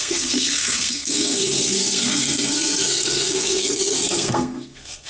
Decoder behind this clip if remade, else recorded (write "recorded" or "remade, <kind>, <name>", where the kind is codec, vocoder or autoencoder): remade, codec, SNAC